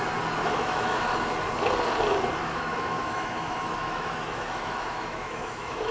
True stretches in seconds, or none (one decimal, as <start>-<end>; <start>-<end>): 0.0-0.4; 1.1-2.4